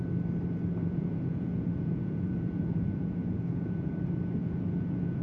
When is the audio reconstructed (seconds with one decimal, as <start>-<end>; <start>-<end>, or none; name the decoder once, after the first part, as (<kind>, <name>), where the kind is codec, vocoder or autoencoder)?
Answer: 0.8-3.9 (vocoder, Vocos); 4.4-5.2